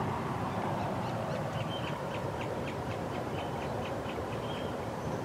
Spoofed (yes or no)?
yes